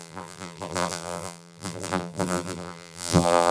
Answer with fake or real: fake